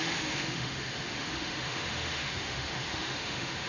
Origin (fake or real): fake